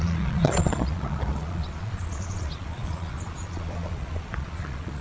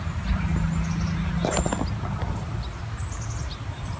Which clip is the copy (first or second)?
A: first